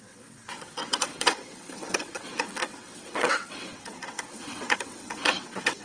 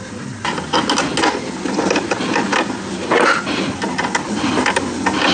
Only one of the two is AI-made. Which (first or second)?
first